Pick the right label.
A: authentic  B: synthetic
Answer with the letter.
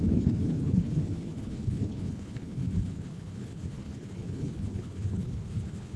B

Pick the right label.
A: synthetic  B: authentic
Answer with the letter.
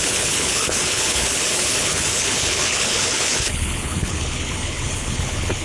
A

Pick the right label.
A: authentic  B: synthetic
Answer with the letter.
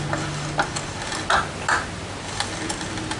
A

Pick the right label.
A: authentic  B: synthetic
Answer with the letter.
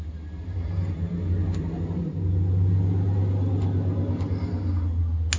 A